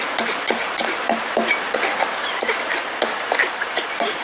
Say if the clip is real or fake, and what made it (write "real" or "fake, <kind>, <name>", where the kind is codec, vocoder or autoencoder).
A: real